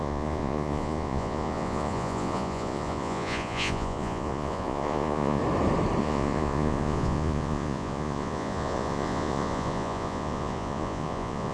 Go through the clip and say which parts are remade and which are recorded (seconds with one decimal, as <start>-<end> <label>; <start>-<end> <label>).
0.0-5.4 remade; 5.4-6.0 recorded; 6.0-11.5 remade